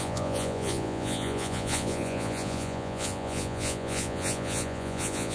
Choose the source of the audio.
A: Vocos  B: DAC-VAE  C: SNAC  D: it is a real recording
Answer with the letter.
A